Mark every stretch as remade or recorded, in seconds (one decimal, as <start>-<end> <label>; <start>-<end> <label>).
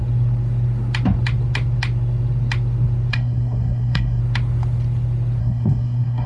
0.0-3.1 recorded; 3.1-4.2 remade; 4.2-5.4 recorded; 5.4-6.3 remade